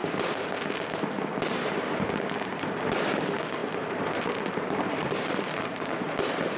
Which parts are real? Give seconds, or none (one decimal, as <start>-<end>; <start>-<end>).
0.0-3.6; 5.9-6.6